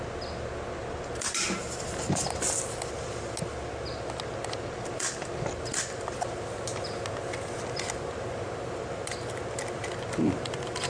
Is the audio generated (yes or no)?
no